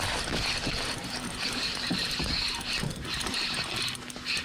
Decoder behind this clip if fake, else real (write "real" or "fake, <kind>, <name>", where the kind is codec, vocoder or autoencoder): real